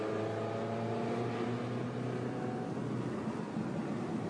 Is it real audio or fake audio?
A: real